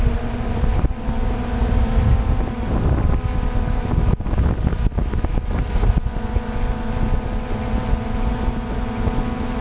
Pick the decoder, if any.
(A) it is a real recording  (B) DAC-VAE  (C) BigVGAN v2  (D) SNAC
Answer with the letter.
A